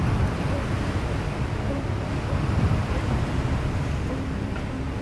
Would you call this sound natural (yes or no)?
no